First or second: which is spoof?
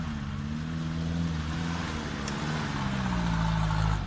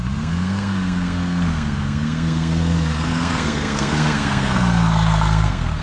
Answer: second